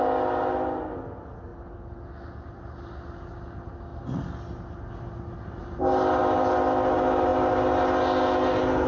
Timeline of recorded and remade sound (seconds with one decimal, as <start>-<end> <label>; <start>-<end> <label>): 0.0-5.6 recorded; 5.6-6.2 remade; 6.2-8.9 recorded